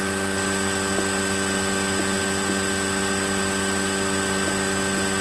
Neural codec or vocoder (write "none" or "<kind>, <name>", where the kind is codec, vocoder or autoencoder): none